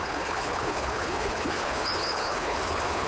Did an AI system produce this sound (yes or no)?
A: yes